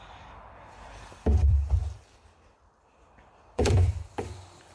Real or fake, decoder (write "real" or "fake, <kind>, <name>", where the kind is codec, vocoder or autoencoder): fake, vocoder, BigVGAN v2